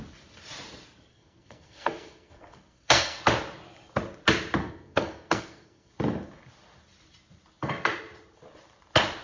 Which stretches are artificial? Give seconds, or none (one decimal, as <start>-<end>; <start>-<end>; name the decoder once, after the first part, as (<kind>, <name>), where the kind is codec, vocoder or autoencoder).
1.1-3.2 (codec, SNAC); 4.6-5.9